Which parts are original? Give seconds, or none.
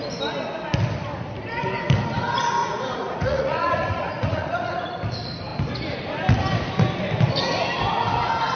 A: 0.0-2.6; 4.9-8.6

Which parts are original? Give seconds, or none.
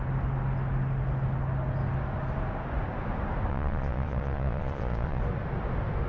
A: 0.0-3.5; 5.2-6.1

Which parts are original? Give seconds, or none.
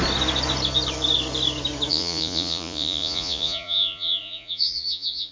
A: 0.0-1.9